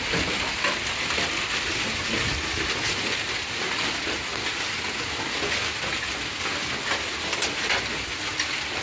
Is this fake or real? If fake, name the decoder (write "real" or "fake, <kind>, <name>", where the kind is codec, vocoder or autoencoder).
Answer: real